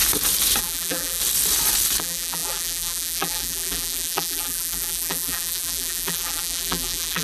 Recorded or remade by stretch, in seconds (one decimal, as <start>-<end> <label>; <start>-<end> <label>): 0.0-0.6 recorded; 0.6-1.2 remade; 1.2-2.0 recorded; 2.0-7.2 remade